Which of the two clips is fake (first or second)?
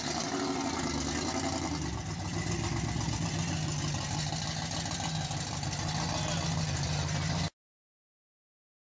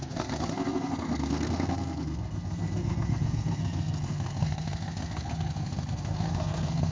second